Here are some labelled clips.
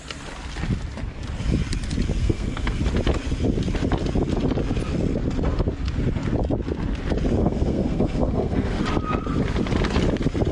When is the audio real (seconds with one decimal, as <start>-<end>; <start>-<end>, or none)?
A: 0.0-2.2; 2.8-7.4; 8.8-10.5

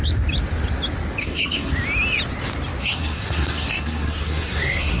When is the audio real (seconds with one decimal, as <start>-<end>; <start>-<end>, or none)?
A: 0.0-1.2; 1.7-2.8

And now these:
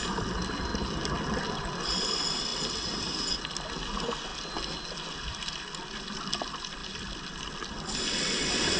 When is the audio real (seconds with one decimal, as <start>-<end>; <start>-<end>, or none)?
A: 0.0-8.8

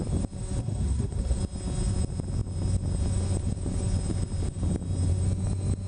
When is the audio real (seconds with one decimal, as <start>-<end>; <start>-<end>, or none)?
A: 0.0-0.6; 1.4-5.9